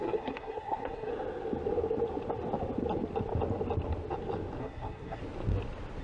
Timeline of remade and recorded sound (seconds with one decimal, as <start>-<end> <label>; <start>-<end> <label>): 0.0-1.1 remade; 1.1-4.6 recorded; 4.6-5.2 remade; 5.2-6.0 recorded